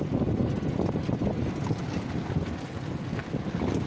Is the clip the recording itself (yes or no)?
yes